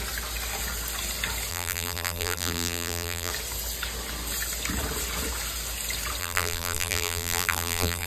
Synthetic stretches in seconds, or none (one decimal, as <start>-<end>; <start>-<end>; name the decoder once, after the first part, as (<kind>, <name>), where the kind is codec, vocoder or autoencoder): 1.5-3.3 (vocoder, BigVGAN v2); 6.2-8.1